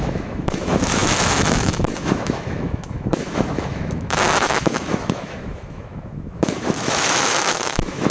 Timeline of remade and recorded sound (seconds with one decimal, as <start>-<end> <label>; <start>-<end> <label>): 0.0-8.1 remade